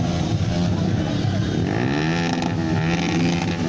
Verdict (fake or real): real